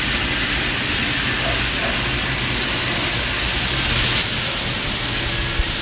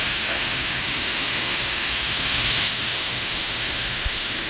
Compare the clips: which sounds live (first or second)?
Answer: first